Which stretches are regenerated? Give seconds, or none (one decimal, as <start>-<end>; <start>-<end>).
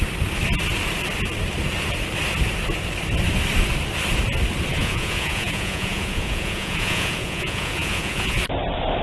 4.7-8.4